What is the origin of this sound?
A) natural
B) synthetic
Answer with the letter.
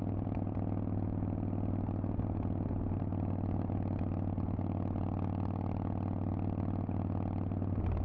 A